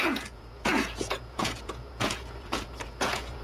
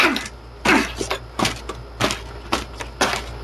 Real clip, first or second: second